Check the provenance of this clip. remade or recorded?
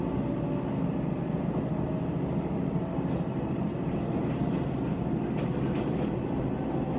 recorded